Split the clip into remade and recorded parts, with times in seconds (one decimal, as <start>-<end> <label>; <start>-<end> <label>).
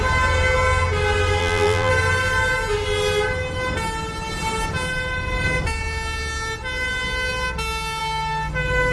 0.0-1.4 recorded; 1.4-1.9 remade; 1.9-8.9 recorded